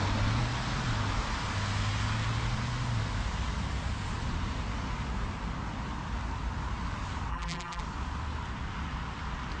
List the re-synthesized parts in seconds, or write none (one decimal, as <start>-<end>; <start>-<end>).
7.3-7.8